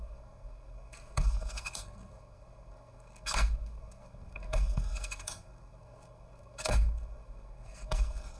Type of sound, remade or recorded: remade